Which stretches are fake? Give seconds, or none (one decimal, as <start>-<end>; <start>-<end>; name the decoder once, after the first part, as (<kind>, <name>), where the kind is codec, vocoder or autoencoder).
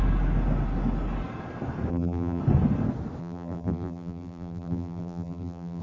1.9-2.4 (vocoder, BigVGAN v2); 3.2-5.8